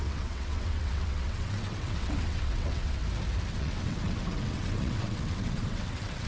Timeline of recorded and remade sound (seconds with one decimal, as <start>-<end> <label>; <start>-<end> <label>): 0.0-3.0 remade; 3.0-3.5 recorded; 3.5-6.3 remade